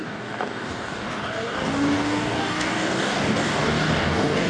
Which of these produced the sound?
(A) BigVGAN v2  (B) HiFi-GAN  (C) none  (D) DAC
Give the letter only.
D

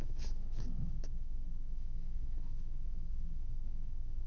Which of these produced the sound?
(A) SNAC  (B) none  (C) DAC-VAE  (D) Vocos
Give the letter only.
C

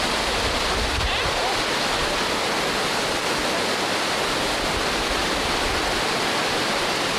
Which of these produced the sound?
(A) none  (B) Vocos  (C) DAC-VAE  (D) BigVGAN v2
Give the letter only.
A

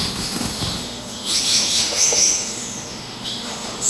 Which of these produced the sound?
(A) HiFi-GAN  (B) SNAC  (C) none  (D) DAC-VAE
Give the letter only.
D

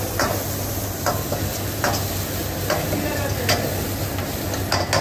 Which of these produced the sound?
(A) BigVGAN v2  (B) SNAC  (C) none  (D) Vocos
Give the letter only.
C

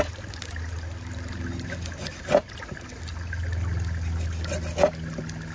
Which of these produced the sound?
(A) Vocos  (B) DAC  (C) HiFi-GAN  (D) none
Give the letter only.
D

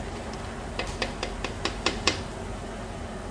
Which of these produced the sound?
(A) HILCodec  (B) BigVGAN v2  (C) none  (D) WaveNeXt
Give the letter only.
C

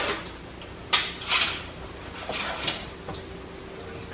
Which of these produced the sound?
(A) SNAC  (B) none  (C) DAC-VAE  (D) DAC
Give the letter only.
B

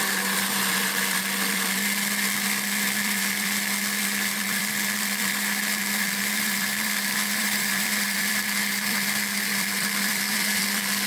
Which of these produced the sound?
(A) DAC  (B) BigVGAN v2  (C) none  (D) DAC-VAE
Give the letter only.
B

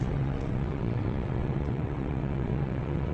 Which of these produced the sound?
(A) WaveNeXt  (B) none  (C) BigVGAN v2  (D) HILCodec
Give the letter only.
A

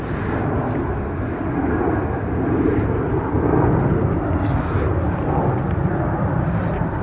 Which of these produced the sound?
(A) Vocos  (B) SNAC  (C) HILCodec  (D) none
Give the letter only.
D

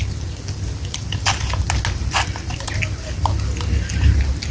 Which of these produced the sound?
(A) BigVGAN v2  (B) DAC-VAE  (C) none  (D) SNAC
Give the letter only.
C